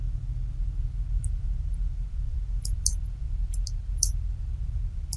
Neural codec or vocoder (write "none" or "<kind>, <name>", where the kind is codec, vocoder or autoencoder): vocoder, BigVGAN v2